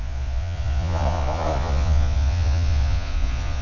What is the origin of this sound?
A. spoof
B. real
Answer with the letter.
A